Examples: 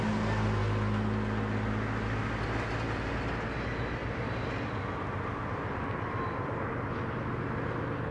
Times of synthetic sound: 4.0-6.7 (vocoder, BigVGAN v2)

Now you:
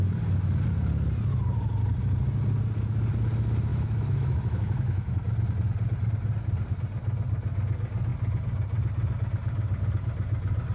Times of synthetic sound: 3.7-5.1 (autoencoder, DAC-VAE)